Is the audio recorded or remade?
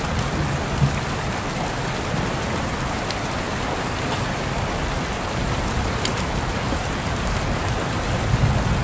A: recorded